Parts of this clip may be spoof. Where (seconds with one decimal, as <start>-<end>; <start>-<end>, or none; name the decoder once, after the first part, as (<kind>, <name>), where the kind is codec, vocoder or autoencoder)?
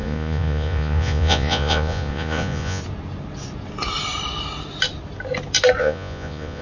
0.0-2.8 (vocoder, Vocos); 5.8-6.6